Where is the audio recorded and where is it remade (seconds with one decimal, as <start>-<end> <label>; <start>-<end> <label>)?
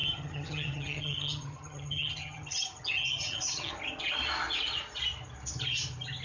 0.0-3.7 remade; 3.7-6.2 recorded